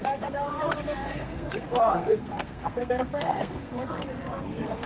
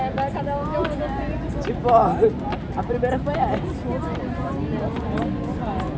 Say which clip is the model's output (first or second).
first